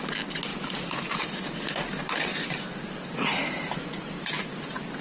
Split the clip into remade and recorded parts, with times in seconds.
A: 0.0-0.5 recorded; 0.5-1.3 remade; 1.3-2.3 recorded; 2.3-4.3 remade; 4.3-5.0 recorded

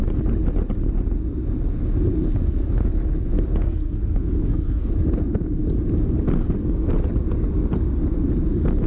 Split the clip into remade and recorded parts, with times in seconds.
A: 0.0-3.5 recorded; 3.5-4.9 remade; 4.9-8.9 recorded

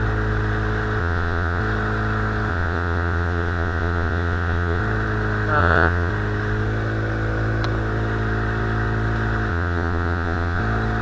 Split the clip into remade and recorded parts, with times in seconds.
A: 0.0-1.0 recorded; 1.0-1.6 remade; 1.6-2.5 recorded; 2.5-4.8 remade; 4.8-5.6 recorded; 5.6-6.1 remade; 6.1-9.5 recorded; 9.5-10.6 remade; 10.6-11.0 recorded

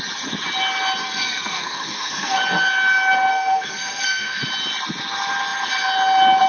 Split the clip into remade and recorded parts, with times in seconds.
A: 0.0-1.0 recorded; 1.0-2.4 remade; 2.4-3.3 recorded; 3.3-4.4 remade; 4.4-6.5 recorded